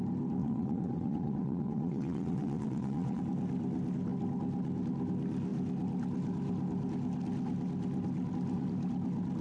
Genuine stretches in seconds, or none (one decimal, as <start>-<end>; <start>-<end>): 0.0-0.4; 3.2-9.4